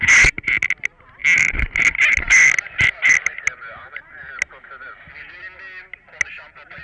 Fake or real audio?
real